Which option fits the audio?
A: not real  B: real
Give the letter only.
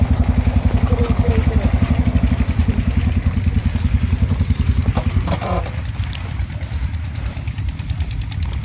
B